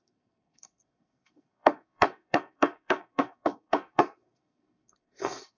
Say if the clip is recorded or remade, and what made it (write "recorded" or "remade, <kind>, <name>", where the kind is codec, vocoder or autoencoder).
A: remade, codec, SNAC